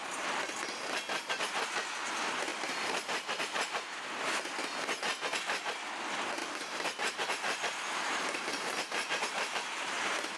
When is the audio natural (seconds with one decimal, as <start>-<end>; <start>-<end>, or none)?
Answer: 0.0-2.5; 4.0-6.4